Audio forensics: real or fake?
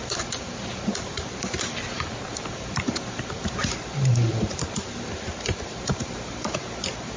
fake